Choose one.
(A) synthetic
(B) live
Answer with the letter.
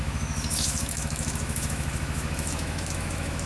A